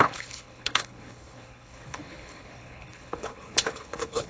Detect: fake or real fake